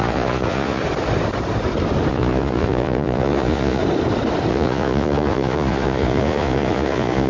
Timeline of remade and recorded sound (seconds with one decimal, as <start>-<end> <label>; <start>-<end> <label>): 0.0-0.8 remade; 0.8-2.1 recorded; 2.1-3.8 remade; 3.8-4.5 recorded; 4.5-7.3 remade